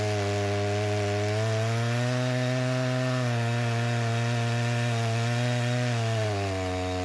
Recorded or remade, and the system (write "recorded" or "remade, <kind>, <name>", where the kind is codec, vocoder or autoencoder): recorded